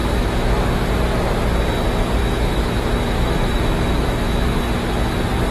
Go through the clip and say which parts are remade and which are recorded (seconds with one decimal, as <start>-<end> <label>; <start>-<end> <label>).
0.0-0.7 remade; 0.7-2.2 recorded; 2.2-4.6 remade; 4.6-5.5 recorded